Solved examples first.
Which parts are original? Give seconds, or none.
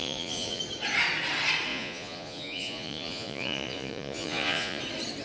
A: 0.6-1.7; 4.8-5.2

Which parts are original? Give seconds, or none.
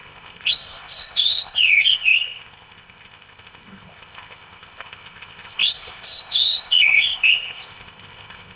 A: none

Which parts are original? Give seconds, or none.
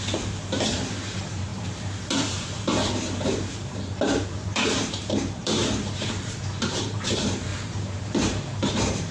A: none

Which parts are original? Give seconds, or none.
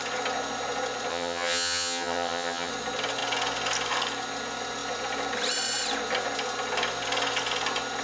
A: 0.0-1.1; 2.7-8.0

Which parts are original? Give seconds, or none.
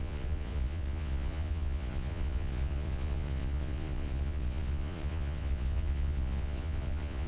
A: none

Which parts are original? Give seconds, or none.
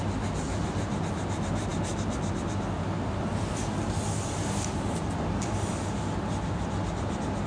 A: 0.0-7.5